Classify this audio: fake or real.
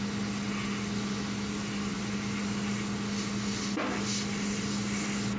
real